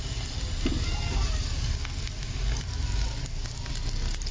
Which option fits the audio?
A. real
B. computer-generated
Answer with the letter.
A